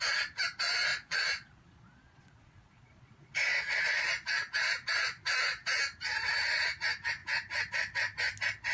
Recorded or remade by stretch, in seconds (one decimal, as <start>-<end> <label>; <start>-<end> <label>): 0.0-0.9 recorded; 0.9-4.0 remade; 4.0-8.7 recorded